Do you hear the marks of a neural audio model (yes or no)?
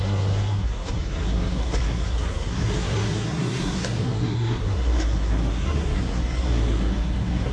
yes